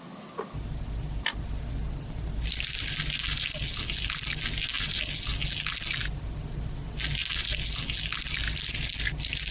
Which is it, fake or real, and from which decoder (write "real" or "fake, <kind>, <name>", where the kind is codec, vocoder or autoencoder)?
real